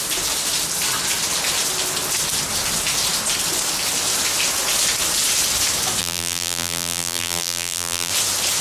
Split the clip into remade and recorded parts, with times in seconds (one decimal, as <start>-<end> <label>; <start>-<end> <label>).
0.0-6.0 recorded; 6.0-8.1 remade; 8.1-8.6 recorded